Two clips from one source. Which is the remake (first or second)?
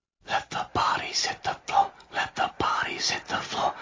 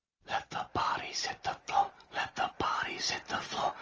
second